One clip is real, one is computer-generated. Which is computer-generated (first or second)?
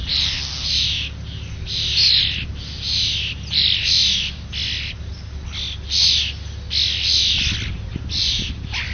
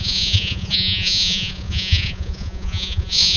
second